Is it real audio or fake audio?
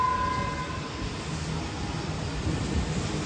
real